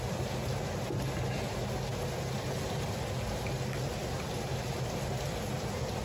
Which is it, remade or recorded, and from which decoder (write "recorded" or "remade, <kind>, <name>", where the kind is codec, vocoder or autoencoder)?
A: recorded